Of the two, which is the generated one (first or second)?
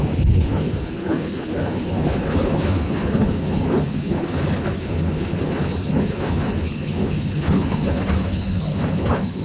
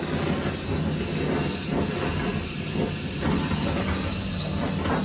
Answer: first